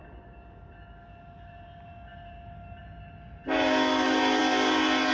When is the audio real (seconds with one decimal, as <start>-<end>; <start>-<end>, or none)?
0.0-5.1